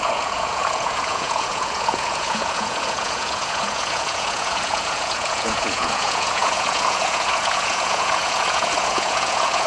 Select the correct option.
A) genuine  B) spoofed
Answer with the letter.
B